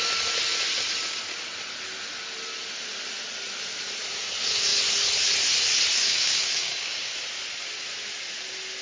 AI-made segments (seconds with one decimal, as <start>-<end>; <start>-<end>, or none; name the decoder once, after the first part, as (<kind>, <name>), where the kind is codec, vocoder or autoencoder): 6.0-7.1 (codec, DAC)